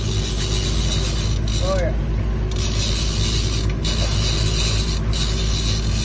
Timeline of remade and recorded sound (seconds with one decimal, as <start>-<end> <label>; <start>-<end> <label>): 0.0-6.0 recorded